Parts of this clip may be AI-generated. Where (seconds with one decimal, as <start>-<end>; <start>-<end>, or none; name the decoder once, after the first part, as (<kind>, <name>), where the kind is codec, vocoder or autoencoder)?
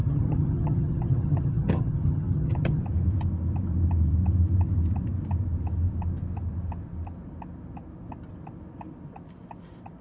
0.0-2.8 (vocoder, HiFi-GAN)